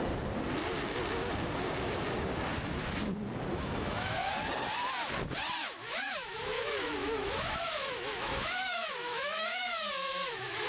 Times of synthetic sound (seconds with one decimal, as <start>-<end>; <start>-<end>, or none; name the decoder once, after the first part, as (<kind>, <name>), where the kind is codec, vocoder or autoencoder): 3.5-4.2 (autoencoder, DAC-VAE); 5.6-10.7